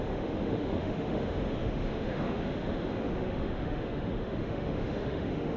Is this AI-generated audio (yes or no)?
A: yes